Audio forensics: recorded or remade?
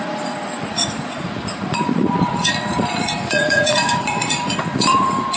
remade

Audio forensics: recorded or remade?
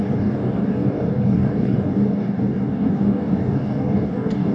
remade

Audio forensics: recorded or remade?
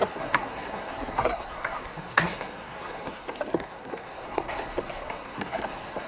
remade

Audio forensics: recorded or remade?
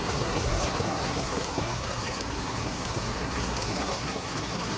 remade